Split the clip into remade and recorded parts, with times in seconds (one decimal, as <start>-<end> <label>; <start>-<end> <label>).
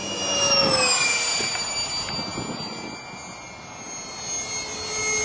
0.0-5.2 recorded